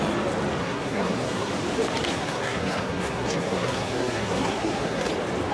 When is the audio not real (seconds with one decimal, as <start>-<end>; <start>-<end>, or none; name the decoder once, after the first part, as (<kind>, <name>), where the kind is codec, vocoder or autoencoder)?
0.6-1.5 (codec, SNAC); 2.1-5.1